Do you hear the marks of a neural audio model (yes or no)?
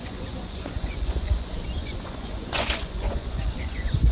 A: yes